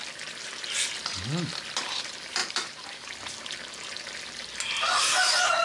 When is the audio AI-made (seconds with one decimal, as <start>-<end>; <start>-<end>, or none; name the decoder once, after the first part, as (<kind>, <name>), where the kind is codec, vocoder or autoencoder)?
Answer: 2.4-3.1 (vocoder, BigVGAN v2)